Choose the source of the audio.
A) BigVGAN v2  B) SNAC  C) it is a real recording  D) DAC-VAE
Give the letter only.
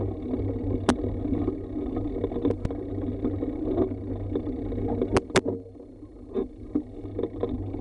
C